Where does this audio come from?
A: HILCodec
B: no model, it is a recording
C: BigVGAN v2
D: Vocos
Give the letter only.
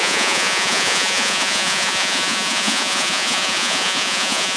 D